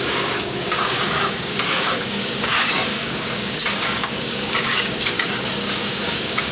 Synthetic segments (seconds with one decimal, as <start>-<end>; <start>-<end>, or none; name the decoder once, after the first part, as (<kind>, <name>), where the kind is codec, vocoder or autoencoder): 0.0-6.5 (codec, DAC)